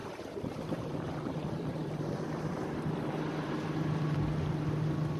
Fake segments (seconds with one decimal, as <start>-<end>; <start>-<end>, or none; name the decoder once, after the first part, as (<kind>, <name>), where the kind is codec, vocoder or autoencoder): 0.0-2.8 (vocoder, BigVGAN v2); 3.3-4.2